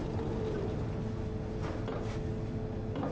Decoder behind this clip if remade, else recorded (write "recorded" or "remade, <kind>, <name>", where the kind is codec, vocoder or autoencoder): recorded